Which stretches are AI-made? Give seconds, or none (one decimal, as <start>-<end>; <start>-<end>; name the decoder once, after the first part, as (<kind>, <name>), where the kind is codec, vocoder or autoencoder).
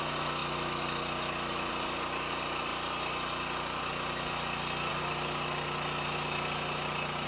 none